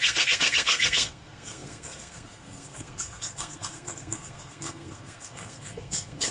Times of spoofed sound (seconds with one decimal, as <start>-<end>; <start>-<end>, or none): 0.0-6.3